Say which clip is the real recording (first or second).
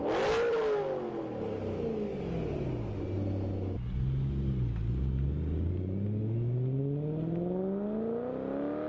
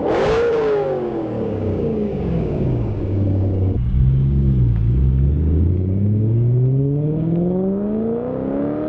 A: first